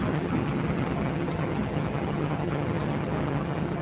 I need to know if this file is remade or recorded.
remade